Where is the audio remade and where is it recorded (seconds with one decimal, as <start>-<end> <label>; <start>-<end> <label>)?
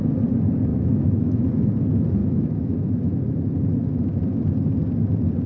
0.0-0.7 recorded; 0.7-1.4 remade; 1.4-2.2 recorded; 2.2-2.9 remade; 2.9-5.5 recorded